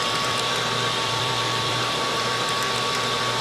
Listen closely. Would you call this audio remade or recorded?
remade